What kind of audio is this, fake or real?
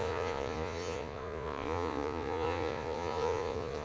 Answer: fake